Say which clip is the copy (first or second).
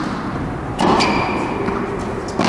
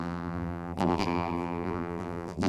second